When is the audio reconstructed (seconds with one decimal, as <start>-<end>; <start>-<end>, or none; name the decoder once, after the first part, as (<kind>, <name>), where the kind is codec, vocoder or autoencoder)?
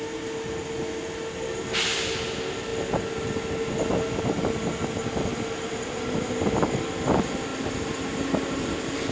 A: none